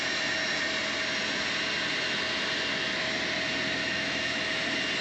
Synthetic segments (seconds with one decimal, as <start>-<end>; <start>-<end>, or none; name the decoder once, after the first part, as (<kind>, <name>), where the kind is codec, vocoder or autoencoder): 3.8-4.5 (autoencoder, DAC-VAE)